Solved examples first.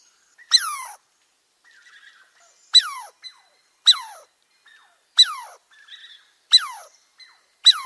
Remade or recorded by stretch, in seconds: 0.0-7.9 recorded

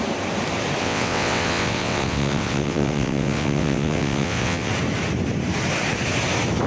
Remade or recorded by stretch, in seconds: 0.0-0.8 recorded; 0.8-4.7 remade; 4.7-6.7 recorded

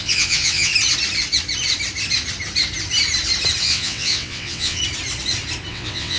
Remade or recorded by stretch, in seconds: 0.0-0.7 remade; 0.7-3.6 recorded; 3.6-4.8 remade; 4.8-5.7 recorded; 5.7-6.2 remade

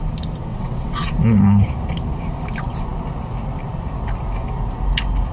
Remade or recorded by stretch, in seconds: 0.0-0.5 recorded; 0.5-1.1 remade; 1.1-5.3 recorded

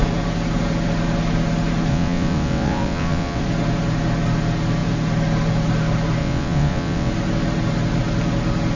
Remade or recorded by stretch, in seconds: 0.0-1.9 recorded; 1.9-3.4 remade; 3.4-6.2 recorded; 6.2-7.1 remade; 7.1-8.8 recorded

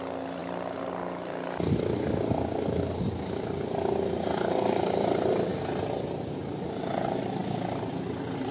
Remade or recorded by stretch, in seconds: 0.0-8.5 recorded